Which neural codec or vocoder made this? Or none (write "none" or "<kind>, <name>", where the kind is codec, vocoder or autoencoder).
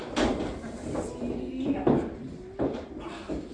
none